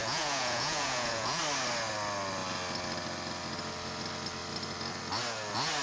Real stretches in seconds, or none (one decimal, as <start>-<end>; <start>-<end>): 1.4-5.8